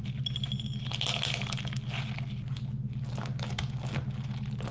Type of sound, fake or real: real